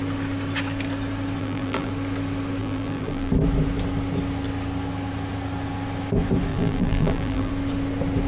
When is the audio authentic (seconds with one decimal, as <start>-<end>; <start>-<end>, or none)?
0.0-1.4; 1.9-2.6; 3.3-6.5; 7.5-8.3

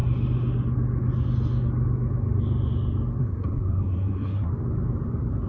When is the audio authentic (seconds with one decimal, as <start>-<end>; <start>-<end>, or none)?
0.0-3.2; 4.5-5.5

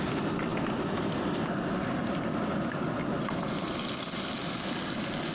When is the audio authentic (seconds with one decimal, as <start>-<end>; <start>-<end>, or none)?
0.0-5.3

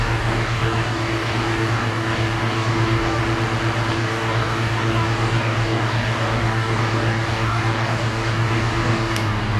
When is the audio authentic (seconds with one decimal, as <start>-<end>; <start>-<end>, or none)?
3.2-3.9

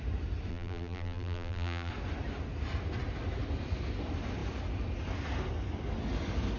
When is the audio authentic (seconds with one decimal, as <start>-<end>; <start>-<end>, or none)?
0.0-0.5; 1.9-6.6

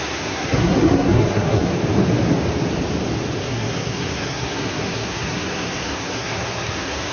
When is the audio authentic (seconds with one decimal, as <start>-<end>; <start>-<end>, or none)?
1.7-3.4

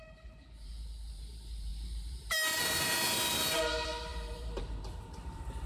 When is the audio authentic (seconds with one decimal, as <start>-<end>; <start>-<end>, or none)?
none

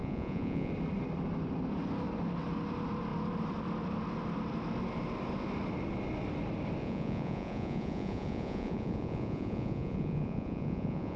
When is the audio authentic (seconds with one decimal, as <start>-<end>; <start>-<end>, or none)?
0.7-6.8